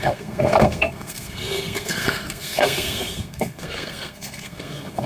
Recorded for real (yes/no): no